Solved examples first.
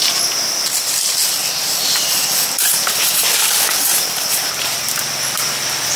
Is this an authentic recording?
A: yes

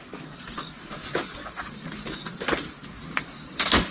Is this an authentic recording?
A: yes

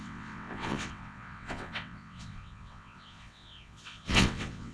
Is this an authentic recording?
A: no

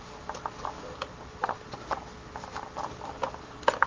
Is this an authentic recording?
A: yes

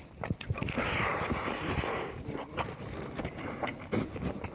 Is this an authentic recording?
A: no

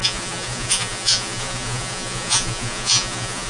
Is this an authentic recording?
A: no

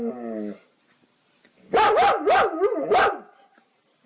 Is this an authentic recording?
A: yes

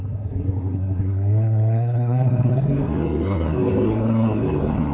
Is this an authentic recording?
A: no